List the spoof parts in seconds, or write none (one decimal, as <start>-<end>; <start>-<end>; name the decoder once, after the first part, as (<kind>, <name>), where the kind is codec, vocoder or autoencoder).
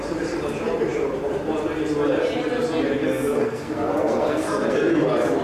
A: 3.0-4.9 (codec, SNAC)